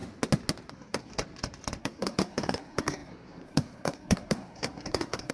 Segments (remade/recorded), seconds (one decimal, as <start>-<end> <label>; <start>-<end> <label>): 0.0-0.7 recorded; 0.7-1.1 remade; 1.1-1.8 recorded; 1.8-5.3 remade